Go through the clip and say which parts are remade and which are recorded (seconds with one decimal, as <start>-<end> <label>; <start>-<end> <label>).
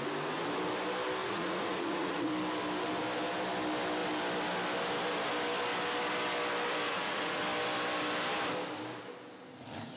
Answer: 0.0-1.2 recorded; 1.2-2.3 remade; 2.3-6.9 recorded; 6.9-7.4 remade; 7.4-10.0 recorded